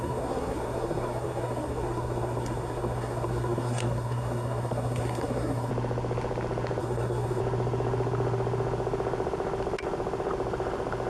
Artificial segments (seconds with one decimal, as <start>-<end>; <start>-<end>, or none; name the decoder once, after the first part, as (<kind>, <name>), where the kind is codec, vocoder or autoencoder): 0.0-5.7 (codec, SNAC); 6.8-7.4